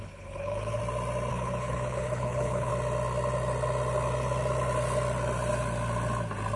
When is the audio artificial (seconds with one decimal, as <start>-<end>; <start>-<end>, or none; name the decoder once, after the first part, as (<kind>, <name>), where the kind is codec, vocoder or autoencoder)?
0.0-0.8 (codec, HILCodec); 1.3-2.7